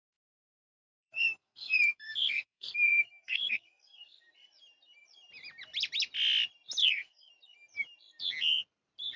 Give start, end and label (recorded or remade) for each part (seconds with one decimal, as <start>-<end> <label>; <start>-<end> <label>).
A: 0.0-4.2 remade; 4.2-6.8 recorded; 6.8-7.3 remade; 7.3-9.2 recorded